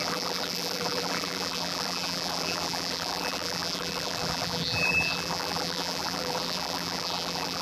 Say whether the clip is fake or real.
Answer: fake